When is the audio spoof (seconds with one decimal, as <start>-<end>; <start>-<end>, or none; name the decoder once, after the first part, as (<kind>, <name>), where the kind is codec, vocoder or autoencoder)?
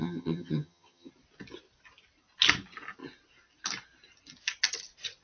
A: 0.0-1.1 (vocoder, HiFi-GAN)